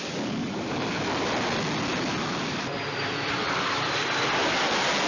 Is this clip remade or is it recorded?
recorded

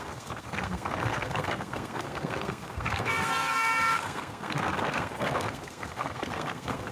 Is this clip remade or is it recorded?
remade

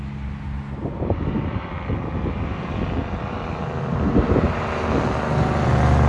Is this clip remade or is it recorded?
recorded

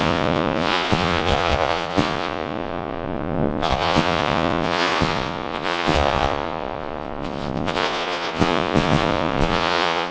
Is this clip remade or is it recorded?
remade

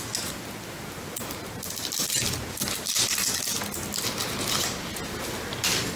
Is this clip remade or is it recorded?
recorded